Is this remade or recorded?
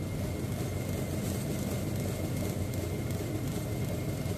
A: recorded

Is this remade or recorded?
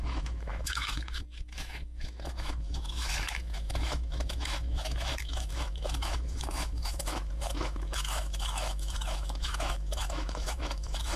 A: remade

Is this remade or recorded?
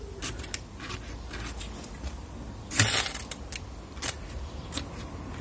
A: recorded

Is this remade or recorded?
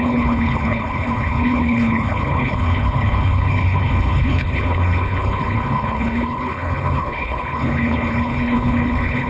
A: remade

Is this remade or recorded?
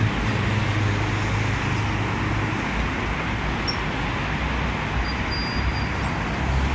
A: recorded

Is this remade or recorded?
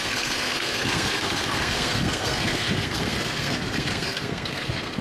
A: remade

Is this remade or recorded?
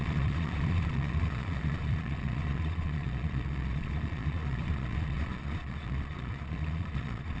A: remade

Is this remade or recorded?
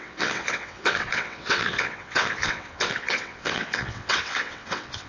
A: remade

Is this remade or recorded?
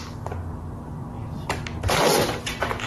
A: recorded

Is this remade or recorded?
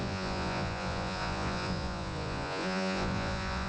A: remade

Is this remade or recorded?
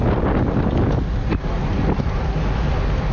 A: recorded